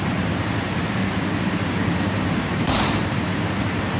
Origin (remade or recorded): remade